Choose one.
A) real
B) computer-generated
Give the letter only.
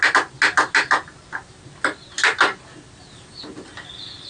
A